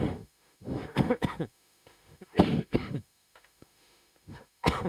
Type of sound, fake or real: fake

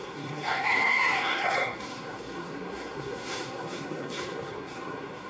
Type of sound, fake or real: fake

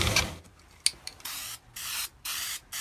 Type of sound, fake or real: real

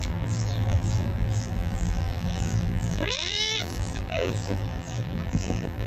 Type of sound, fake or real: fake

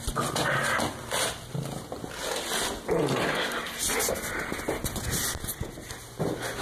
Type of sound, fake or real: real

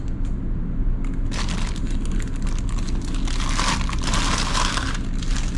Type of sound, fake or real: real